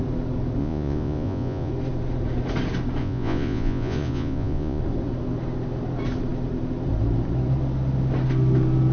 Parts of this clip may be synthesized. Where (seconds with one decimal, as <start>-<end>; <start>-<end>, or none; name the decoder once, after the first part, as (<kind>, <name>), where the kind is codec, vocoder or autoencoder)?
0.6-1.7 (vocoder, Vocos); 3.0-4.8